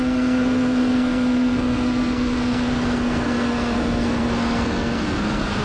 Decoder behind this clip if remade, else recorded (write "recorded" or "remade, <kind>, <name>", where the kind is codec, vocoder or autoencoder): remade, codec, SNAC